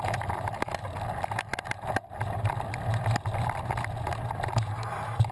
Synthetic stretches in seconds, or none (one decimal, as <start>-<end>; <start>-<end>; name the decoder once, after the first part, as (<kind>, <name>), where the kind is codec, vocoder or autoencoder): 0.0-5.3 (vocoder, BigVGAN v2)